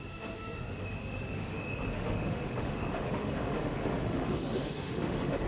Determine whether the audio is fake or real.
fake